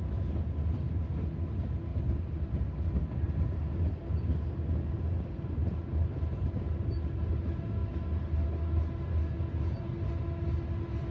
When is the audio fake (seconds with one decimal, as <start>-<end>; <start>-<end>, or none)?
1.9-2.9